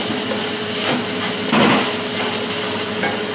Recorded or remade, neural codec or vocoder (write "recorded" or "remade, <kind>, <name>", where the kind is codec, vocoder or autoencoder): recorded